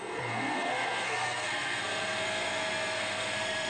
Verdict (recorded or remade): remade